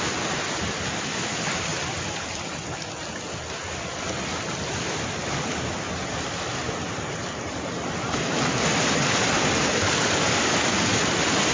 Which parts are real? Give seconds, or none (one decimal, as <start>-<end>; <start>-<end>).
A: 0.0-11.5